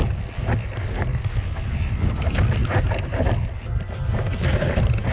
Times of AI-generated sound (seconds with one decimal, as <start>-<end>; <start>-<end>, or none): none